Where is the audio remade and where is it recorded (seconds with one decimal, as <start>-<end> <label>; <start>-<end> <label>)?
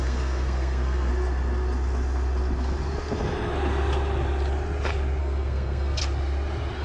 0.0-1.1 remade; 1.1-5.2 recorded; 5.2-6.0 remade; 6.0-6.8 recorded